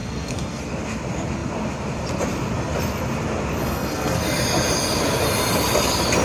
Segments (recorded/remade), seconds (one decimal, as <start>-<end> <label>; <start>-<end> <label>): 0.0-0.6 remade; 0.6-3.6 recorded; 3.6-4.2 remade; 4.2-6.2 recorded